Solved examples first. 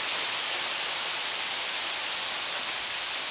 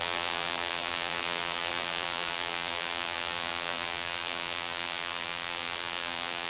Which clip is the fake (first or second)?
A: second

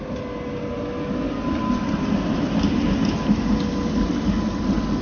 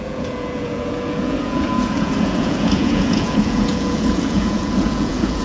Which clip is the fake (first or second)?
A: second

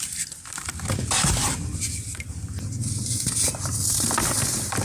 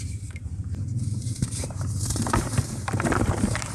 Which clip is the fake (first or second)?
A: second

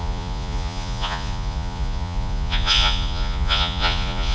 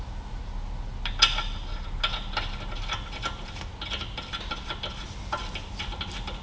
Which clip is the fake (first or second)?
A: first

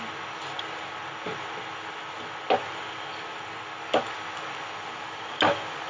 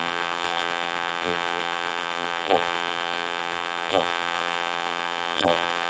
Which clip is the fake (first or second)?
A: second